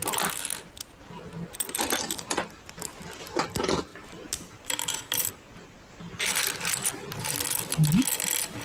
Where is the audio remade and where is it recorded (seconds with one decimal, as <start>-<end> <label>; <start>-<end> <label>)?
0.0-3.9 recorded; 3.9-5.3 remade; 5.3-8.6 recorded